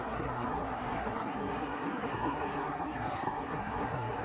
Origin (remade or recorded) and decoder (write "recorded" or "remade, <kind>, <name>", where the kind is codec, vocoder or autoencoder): remade, codec, SNAC